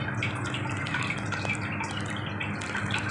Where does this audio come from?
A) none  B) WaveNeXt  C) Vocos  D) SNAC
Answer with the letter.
A